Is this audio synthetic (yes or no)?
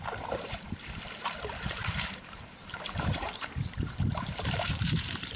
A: yes